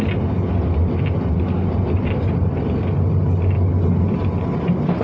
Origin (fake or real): real